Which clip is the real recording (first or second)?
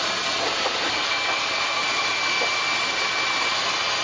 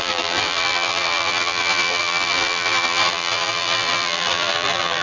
first